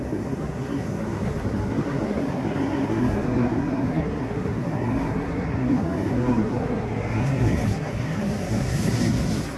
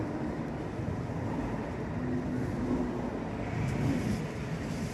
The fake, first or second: first